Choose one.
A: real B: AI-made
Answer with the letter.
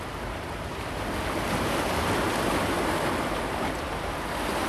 A